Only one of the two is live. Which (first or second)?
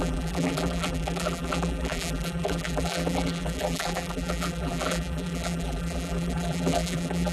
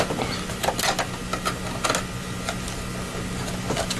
second